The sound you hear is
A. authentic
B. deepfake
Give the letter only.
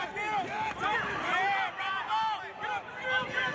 A